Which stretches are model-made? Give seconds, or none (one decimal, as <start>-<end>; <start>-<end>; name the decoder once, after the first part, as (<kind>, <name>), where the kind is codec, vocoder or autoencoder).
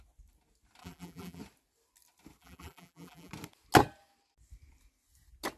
0.8-1.4 (vocoder, BigVGAN v2); 2.4-3.3